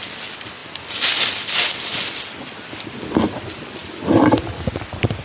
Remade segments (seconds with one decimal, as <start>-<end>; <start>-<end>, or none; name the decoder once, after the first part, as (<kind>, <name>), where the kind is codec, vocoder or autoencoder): 0.6-2.1 (vocoder, BigVGAN v2); 3.8-4.5